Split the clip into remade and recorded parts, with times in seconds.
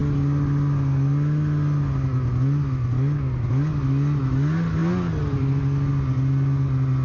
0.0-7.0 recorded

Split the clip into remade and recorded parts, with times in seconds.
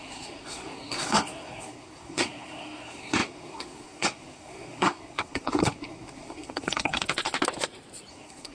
0.0-7.0 remade; 7.0-8.1 recorded; 8.1-8.5 remade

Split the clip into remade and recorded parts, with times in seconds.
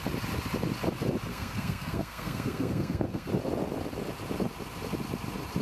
0.0-1.3 recorded; 1.3-3.3 remade; 3.3-5.6 recorded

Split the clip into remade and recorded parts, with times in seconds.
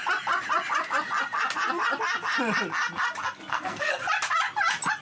0.0-3.5 recorded; 3.5-4.0 remade; 4.0-5.0 recorded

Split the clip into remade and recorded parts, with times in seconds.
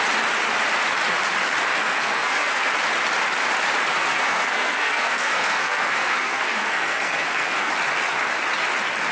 0.0-1.8 recorded; 1.8-2.7 remade; 2.7-3.9 recorded; 3.9-7.7 remade; 7.7-9.1 recorded